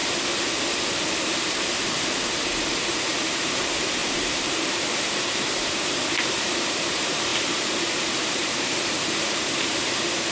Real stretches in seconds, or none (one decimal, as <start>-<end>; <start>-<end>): 0.0-1.2